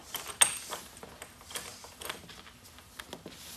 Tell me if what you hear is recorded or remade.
recorded